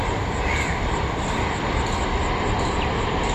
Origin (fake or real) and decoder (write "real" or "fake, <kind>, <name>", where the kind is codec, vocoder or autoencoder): fake, vocoder, BigVGAN v2